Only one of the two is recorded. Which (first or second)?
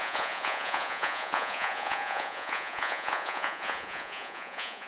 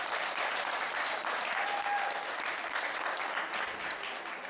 second